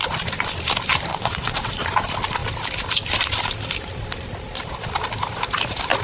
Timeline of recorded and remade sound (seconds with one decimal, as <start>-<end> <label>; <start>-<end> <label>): 0.0-1.1 recorded; 1.1-1.7 remade; 1.7-6.0 recorded